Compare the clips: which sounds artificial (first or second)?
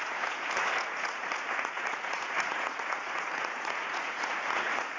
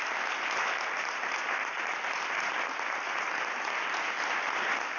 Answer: first